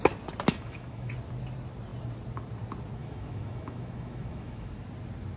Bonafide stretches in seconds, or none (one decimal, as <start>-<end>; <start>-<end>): 0.0-0.5; 1.1-3.0; 4.7-5.4